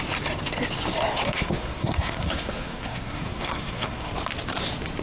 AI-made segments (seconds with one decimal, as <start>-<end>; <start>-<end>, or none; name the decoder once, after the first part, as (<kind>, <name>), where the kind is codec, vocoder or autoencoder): 1.1-4.1 (codec, SNAC)